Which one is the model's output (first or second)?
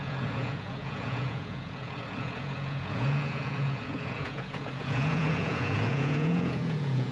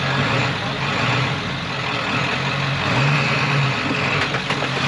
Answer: first